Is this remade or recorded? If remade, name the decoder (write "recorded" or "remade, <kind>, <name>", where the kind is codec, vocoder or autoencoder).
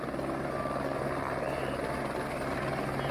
recorded